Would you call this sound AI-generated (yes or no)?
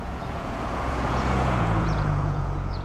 yes